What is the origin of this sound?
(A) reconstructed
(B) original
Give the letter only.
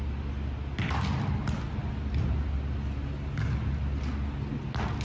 B